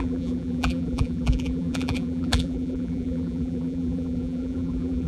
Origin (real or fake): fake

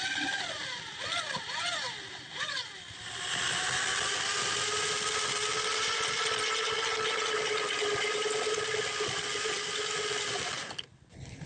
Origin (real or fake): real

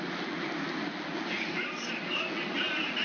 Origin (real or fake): real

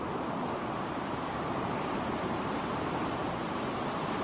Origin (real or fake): fake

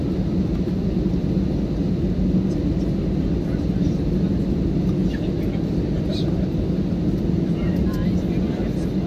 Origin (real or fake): real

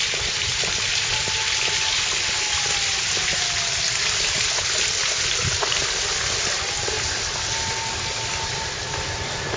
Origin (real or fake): real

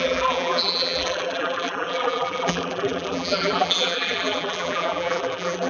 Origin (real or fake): fake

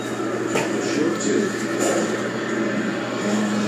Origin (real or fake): real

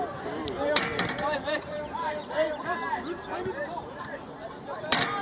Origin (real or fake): fake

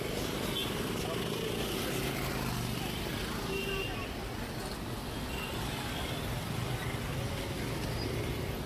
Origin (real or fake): real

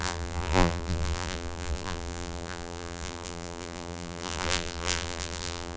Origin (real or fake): fake